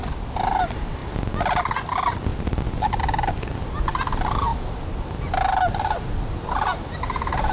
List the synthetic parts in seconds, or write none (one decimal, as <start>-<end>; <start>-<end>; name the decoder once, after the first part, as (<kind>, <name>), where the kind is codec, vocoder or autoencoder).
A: 2.3-3.0 (vocoder, BigVGAN v2)